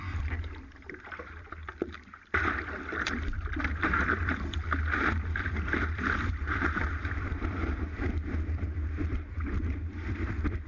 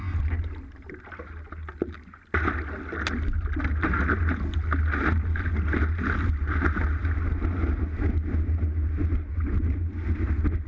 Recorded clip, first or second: second